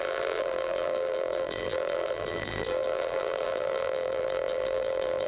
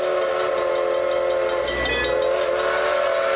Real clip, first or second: second